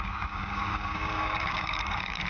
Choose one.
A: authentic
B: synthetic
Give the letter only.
B